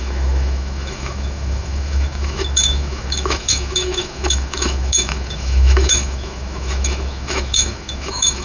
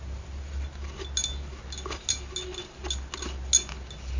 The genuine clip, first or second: second